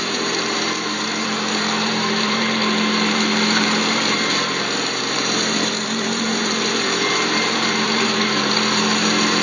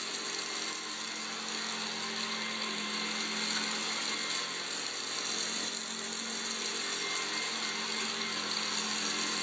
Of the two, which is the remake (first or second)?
first